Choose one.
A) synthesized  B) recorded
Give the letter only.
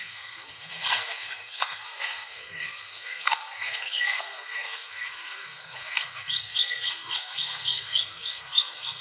A